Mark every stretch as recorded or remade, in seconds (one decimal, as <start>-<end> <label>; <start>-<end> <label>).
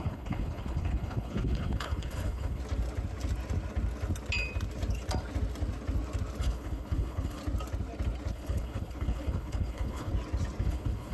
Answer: 0.0-2.6 remade; 2.6-6.4 recorded; 6.4-7.4 remade; 7.4-8.3 recorded; 8.3-10.1 remade; 10.1-10.6 recorded; 10.6-11.1 remade